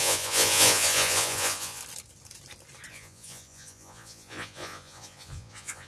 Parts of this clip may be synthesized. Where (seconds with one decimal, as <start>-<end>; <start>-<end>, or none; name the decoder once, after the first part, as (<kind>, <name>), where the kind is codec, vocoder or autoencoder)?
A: 0.0-1.8 (vocoder, Vocos); 2.9-5.9